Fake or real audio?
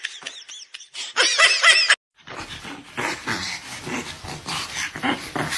real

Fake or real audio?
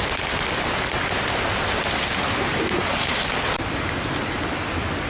real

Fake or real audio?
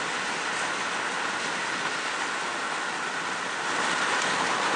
real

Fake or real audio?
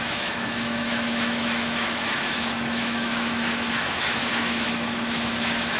fake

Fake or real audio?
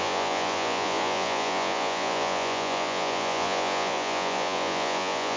fake